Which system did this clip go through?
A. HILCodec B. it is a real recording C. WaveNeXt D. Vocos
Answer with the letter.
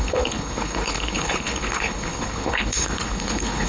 A